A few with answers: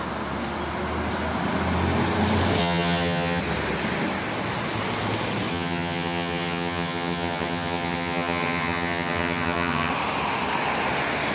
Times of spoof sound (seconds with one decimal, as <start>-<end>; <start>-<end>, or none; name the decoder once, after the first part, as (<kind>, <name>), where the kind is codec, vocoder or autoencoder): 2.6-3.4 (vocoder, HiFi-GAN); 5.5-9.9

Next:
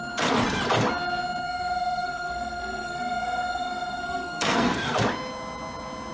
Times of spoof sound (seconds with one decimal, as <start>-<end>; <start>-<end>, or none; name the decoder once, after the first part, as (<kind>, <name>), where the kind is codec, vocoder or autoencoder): 1.4-5.0 (codec, SNAC)

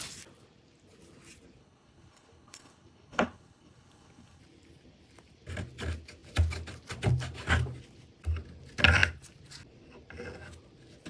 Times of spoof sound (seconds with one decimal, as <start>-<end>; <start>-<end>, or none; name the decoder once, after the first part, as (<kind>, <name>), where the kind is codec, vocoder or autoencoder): 1.6-4.4 (codec, HILCodec)

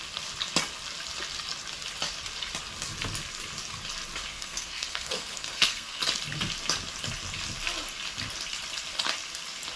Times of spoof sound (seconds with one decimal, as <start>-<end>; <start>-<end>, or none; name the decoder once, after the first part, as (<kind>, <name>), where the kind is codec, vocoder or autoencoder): 4.3-6.0 (codec, SNAC)

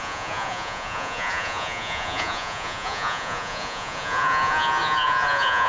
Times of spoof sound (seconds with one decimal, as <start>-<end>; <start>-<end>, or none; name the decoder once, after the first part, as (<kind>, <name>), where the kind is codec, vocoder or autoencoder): 0.0-5.7 (vocoder, Vocos)

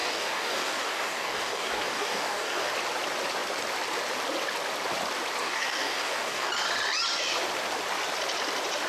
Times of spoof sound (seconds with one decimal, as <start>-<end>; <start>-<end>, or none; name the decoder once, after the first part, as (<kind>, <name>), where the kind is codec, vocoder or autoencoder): 0.0-2.7 (codec, DAC); 5.4-6.5